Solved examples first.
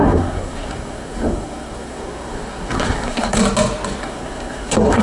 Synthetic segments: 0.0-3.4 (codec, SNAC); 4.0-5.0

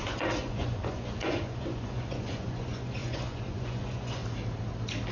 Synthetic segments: 0.0-4.2 (vocoder, Vocos)